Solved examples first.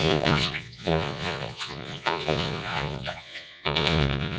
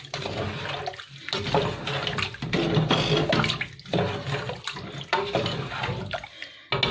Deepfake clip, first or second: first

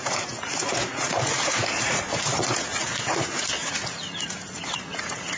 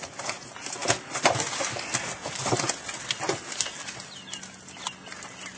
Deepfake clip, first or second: first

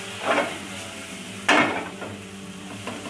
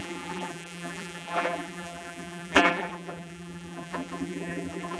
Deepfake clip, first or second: second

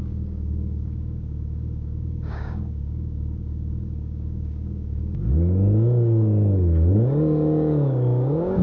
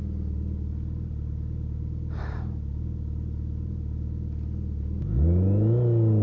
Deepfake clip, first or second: first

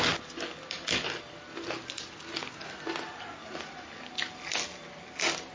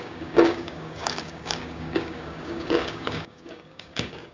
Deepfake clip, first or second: second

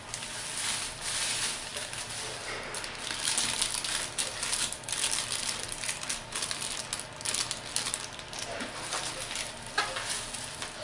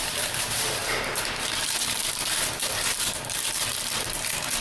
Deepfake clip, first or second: second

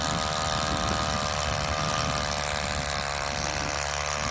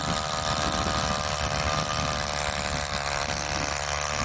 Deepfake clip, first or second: second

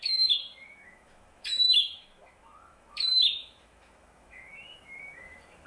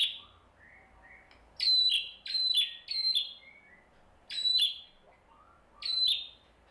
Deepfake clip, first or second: first